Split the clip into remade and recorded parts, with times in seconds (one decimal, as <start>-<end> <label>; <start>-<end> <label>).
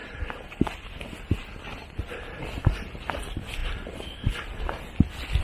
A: 0.0-5.4 recorded